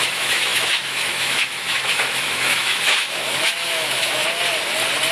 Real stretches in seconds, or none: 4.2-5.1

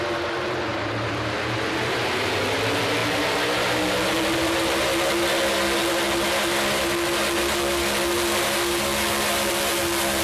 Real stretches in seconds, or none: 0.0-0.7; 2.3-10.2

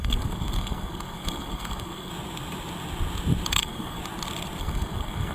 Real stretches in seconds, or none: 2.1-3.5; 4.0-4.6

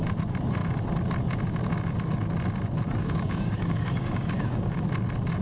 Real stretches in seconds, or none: 0.0-3.0; 4.8-5.4